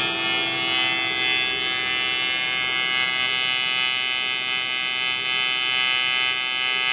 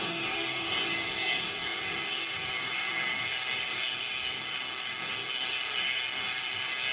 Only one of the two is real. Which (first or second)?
first